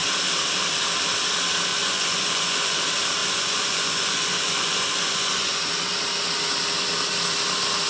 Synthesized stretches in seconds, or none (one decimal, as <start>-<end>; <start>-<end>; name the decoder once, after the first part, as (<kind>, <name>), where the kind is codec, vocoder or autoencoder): 1.7-2.8 (vocoder, Vocos); 3.2-5.7